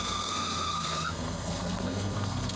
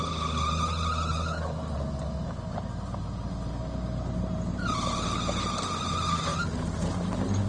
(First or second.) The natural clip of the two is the second